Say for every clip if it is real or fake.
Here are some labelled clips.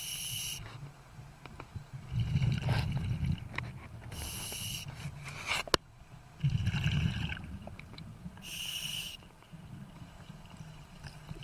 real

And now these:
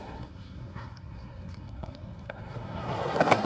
fake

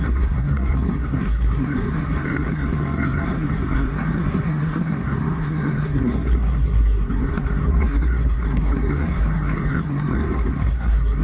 fake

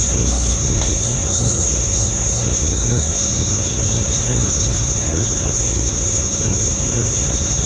fake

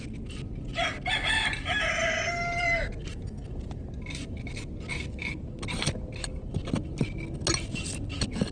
real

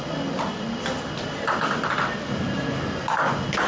real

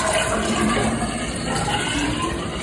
real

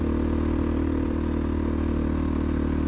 real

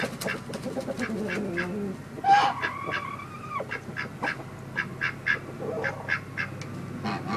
real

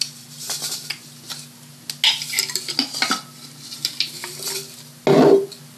real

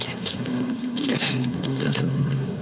fake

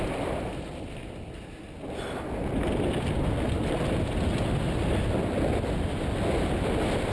real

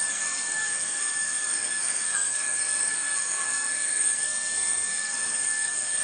fake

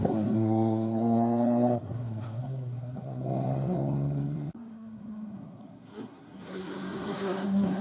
fake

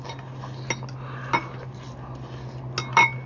real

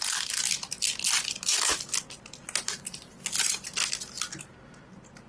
real